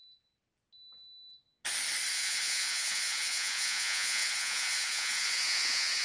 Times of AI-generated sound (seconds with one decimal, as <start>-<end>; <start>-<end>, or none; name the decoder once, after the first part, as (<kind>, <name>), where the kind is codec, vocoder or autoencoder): 2.1-6.0 (vocoder, Vocos)

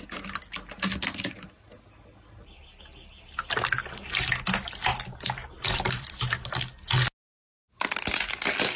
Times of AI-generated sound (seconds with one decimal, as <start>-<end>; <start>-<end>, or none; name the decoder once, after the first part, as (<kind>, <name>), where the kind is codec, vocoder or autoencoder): 4.9-6.5 (vocoder, BigVGAN v2)

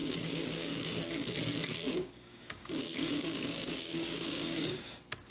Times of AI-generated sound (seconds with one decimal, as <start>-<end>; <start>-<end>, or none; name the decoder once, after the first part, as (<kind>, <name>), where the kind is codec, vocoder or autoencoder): 0.0-1.0 (codec, DAC); 1.7-4.8

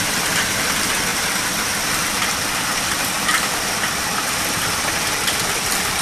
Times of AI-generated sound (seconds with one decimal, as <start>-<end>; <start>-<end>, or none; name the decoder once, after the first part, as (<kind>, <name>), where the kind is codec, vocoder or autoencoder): 0.0-6.0 (vocoder, BigVGAN v2)

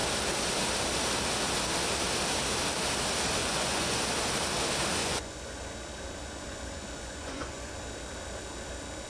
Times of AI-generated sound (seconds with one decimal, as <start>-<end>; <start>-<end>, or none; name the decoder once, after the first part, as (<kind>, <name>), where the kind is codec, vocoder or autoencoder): 3.4-4.0 (vocoder, Vocos); 5.0-5.6; 6.2-7.7

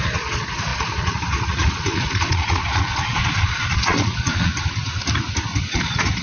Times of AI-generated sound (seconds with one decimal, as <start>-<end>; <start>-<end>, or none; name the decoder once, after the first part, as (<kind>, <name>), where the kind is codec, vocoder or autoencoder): 0.0-4.5 (vocoder, Vocos); 5.6-6.2

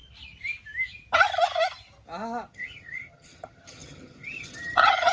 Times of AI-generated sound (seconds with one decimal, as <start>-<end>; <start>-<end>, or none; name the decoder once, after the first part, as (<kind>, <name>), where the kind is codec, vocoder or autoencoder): 2.5-5.1 (vocoder, HiFi-GAN)